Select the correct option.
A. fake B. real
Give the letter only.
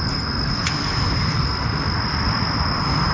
B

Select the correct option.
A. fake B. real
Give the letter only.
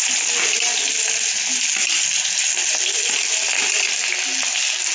B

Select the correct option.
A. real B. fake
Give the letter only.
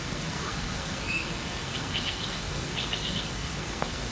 B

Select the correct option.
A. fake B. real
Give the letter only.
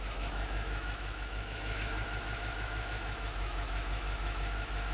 A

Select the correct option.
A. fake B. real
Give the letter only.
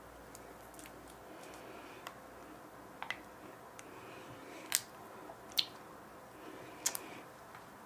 B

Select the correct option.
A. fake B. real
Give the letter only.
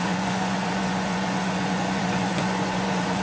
A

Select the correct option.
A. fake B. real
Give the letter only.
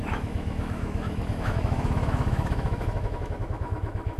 A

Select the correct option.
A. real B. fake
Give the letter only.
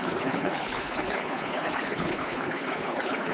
B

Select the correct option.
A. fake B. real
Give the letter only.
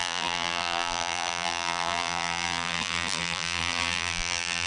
A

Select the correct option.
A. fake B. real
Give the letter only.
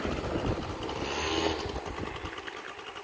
B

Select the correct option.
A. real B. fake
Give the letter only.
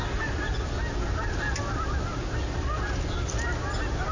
A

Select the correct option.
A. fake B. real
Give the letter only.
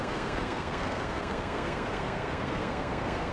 A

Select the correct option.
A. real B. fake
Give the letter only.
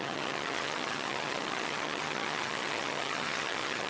B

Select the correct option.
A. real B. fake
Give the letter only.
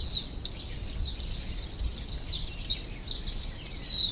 A